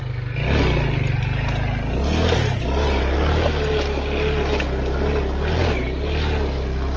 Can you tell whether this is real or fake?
real